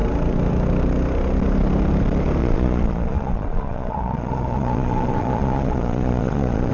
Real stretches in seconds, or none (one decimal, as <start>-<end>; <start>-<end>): 0.0-2.4